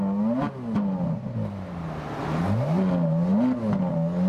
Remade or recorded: recorded